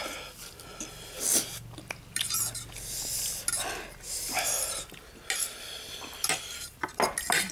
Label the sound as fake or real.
real